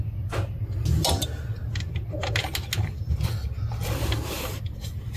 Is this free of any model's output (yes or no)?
yes